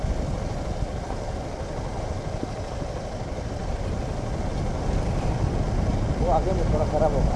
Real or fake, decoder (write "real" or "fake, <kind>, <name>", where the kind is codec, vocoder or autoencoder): real